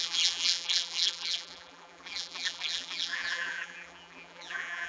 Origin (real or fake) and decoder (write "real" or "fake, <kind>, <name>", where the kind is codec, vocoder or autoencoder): fake, vocoder, BigVGAN v2